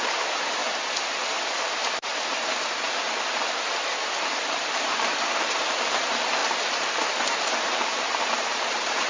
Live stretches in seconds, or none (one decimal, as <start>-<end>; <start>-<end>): 0.6-1.3; 2.1-4.2